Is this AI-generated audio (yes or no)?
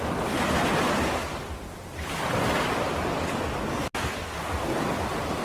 no